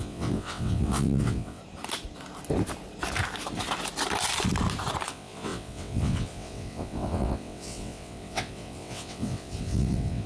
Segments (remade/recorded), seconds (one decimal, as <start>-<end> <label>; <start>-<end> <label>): 0.0-1.6 remade; 1.6-5.1 recorded; 5.1-10.3 remade